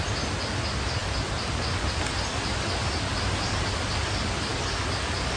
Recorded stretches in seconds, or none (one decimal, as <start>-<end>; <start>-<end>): 0.0-5.4